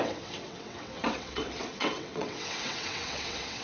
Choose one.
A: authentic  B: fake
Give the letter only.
B